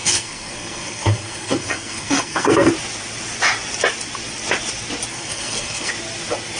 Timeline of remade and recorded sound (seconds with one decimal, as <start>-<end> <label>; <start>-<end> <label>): 0.0-2.7 remade; 2.7-5.1 recorded; 5.1-5.9 remade; 5.9-6.6 recorded